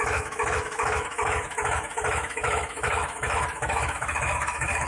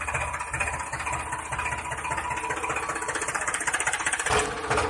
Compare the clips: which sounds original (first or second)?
second